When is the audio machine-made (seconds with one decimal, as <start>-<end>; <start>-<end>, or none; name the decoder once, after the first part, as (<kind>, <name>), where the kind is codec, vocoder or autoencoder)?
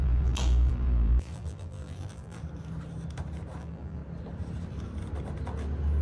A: 0.0-2.4 (vocoder, BigVGAN v2); 3.6-4.0